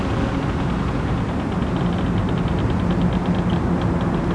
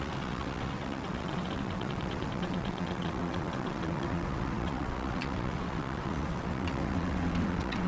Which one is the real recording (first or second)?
first